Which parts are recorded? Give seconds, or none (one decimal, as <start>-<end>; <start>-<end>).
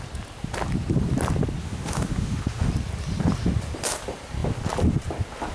0.0-1.6; 2.7-5.5